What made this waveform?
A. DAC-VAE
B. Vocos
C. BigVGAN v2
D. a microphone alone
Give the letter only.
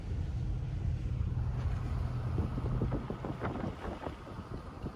D